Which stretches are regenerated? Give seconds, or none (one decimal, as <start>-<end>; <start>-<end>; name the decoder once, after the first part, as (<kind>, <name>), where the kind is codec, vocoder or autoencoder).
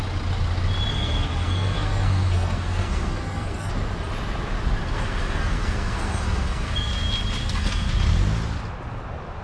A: 0.9-3.7 (codec, SNAC); 4.8-6.9; 7.4-7.9